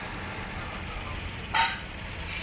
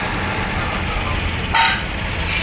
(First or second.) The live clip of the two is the second